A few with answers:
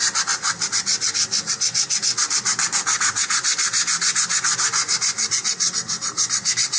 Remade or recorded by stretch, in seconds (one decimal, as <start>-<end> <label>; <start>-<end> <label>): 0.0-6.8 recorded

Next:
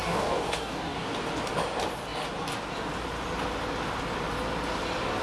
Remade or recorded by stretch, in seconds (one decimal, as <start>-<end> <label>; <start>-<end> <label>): 0.0-1.1 remade; 1.1-5.2 recorded

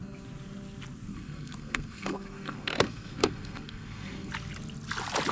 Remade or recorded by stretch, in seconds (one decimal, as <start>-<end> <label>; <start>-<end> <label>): 0.0-1.1 recorded; 1.1-4.3 remade; 4.3-5.3 recorded

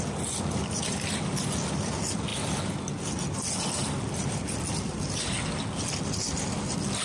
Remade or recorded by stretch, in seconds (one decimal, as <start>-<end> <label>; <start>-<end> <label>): 0.0-7.0 recorded

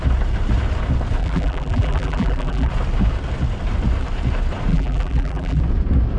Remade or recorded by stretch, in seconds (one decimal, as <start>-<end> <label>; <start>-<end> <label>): 0.0-1.2 recorded; 1.2-2.7 remade; 2.7-4.7 recorded; 4.7-5.6 remade; 5.6-6.2 recorded

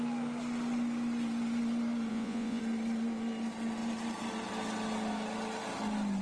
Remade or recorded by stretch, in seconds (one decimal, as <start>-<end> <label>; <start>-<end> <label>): 0.0-2.1 recorded; 2.1-2.6 remade; 2.6-6.2 recorded

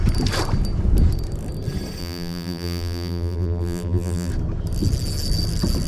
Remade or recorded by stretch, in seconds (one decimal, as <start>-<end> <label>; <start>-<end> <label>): 0.0-2.0 recorded; 2.0-4.3 remade; 4.3-5.9 recorded